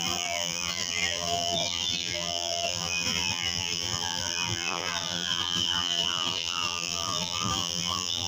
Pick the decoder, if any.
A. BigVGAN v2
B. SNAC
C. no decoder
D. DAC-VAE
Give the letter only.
A